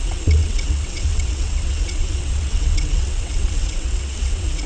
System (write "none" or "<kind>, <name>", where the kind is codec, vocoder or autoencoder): vocoder, WaveNeXt